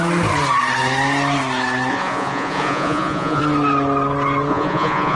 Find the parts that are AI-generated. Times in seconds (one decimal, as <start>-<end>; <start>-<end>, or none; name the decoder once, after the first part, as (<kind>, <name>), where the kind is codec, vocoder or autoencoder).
1.9-3.4 (vocoder, Vocos); 4.5-5.2

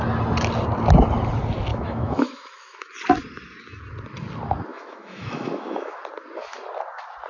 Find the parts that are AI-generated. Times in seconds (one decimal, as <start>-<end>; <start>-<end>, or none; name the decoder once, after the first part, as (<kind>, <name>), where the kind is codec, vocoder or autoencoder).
1.7-2.9 (autoencoder, DAC-VAE); 4.7-6.0